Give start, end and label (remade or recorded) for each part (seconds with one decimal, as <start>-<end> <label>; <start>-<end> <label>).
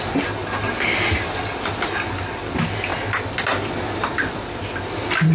0.0-5.3 recorded